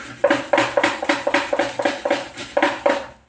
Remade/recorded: recorded